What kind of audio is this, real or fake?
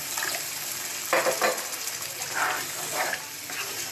real